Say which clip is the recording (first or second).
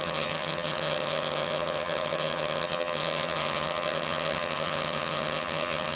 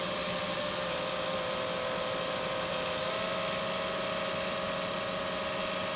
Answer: second